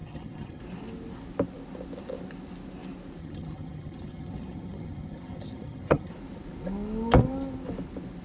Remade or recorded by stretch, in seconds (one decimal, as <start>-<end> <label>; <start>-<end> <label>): 0.0-0.6 remade; 0.6-3.2 recorded; 3.2-6.1 remade; 6.1-8.2 recorded